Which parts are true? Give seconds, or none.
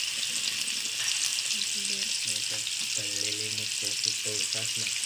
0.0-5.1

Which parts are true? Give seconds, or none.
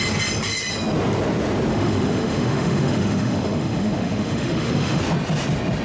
0.0-1.7; 5.0-5.8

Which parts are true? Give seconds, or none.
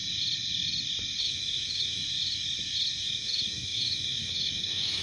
0.0-1.2; 2.0-3.0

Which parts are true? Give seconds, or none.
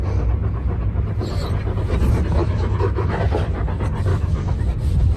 0.0-2.4; 3.2-4.1; 4.6-5.2